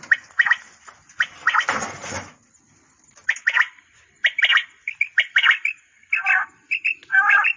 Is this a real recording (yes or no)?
yes